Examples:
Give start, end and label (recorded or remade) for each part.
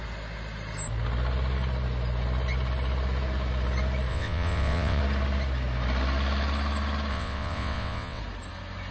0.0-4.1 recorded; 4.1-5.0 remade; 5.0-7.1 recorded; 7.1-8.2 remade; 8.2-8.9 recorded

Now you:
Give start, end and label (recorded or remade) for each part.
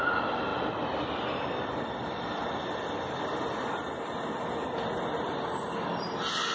0.0-6.5 recorded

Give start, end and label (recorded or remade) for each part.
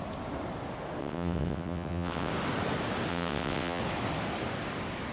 0.0-1.0 recorded; 1.0-2.3 remade; 2.3-3.1 recorded; 3.1-3.8 remade; 3.8-5.1 recorded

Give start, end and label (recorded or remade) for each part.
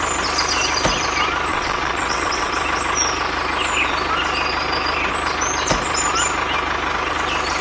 0.0-1.5 recorded; 1.5-2.5 remade; 2.5-7.6 recorded